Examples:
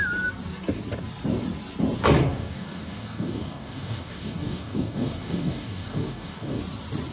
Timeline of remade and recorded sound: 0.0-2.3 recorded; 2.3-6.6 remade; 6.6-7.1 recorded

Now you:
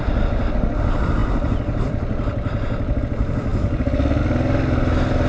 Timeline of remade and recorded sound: 0.0-5.3 recorded

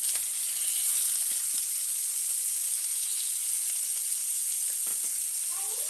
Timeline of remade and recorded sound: 0.0-5.9 recorded

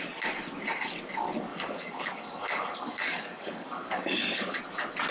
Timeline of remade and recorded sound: 0.0-1.5 recorded; 1.5-4.6 remade; 4.6-5.1 recorded

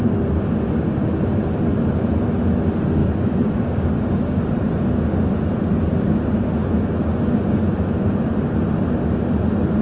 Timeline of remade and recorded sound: 0.0-3.0 recorded; 3.0-4.4 remade; 4.4-6.6 recorded; 6.6-7.6 remade; 7.6-9.8 recorded

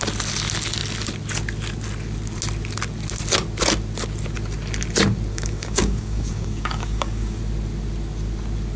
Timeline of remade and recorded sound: 0.0-5.3 recorded; 5.3-7.4 remade; 7.4-8.8 recorded

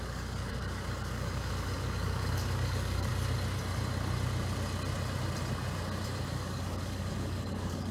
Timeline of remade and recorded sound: 0.0-3.1 remade; 3.1-6.3 recorded; 6.3-7.9 remade